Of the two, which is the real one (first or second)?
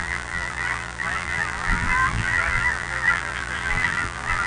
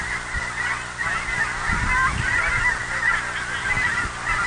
second